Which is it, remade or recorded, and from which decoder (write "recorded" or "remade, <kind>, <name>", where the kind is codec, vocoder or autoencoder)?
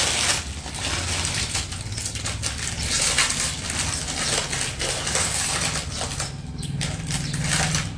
recorded